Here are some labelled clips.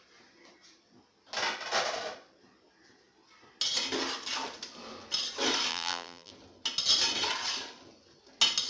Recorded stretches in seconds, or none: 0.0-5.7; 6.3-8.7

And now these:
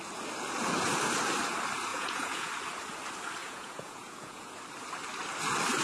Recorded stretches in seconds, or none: 0.0-1.9; 2.5-3.4; 4.6-5.8

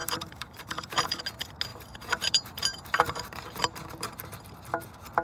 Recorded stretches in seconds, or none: 1.2-1.7; 3.9-5.2